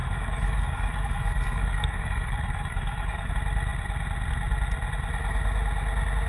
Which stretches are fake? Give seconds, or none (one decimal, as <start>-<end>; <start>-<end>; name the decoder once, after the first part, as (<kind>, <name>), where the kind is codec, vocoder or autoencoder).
0.0-3.3 (codec, DAC)